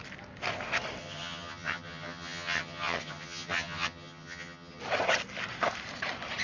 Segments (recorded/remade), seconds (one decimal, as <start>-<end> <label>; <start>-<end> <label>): 0.0-1.0 recorded; 1.0-4.8 remade; 4.8-6.4 recorded